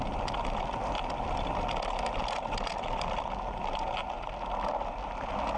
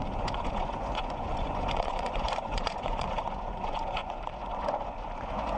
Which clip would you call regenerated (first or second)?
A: second